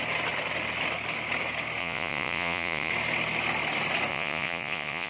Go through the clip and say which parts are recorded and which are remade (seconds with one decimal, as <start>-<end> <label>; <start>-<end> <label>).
0.0-1.8 recorded; 1.8-2.9 remade; 2.9-4.1 recorded; 4.1-5.1 remade